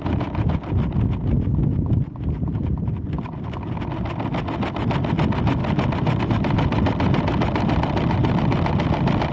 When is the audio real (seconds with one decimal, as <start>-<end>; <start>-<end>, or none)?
0.0-9.3